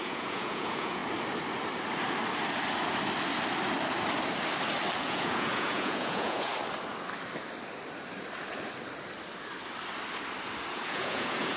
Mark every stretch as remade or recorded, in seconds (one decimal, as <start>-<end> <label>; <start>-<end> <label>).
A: 0.0-1.0 remade; 1.0-5.0 recorded; 5.0-6.5 remade; 6.5-10.7 recorded; 10.7-11.6 remade